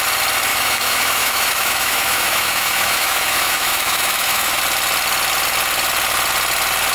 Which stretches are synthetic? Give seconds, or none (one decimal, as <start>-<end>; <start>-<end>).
0.5-4.6